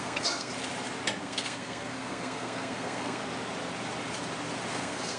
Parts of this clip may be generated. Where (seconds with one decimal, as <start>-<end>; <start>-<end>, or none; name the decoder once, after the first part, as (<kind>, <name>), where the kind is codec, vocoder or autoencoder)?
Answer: 0.0-0.5 (codec, SNAC); 1.2-3.2; 4.7-5.2